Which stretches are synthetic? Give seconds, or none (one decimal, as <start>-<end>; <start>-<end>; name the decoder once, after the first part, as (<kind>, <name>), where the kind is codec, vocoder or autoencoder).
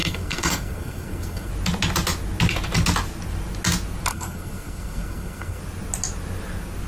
0.0-1.5 (codec, SNAC); 4.1-5.6